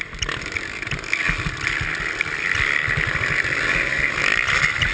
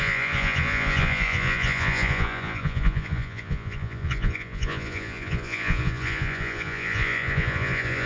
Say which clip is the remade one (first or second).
second